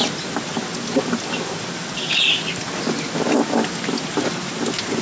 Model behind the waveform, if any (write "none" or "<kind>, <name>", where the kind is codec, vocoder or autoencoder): none